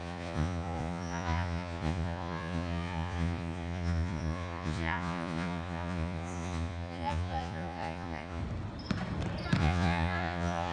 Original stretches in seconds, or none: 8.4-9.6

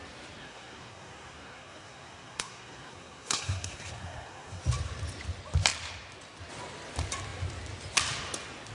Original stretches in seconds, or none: 0.0-0.4; 4.6-8.7

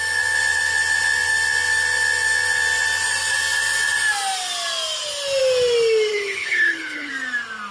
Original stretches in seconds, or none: 0.0-6.1; 7.1-7.7

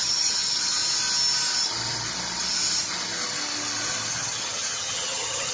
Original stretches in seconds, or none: 0.8-4.1

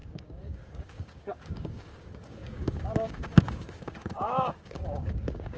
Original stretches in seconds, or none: none

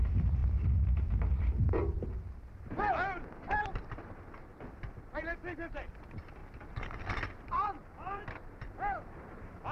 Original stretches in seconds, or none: none

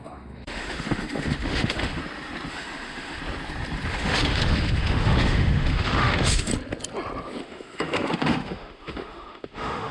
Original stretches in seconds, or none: 2.0-2.5; 3.2-3.9; 6.5-7.4